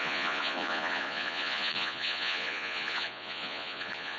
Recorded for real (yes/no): no